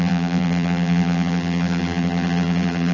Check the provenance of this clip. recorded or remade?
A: remade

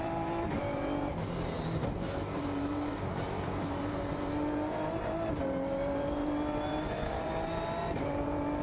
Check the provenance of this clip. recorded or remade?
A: remade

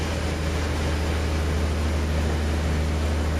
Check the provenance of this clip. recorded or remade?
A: recorded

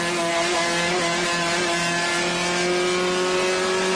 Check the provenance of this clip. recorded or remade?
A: recorded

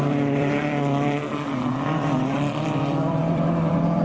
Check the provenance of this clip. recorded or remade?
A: remade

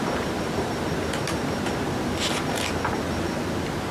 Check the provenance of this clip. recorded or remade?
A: recorded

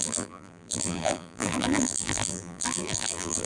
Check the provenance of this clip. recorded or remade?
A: remade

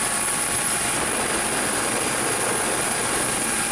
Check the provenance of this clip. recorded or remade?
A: remade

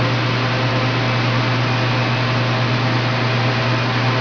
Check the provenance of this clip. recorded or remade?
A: recorded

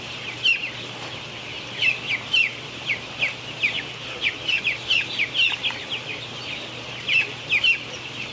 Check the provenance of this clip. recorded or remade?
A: recorded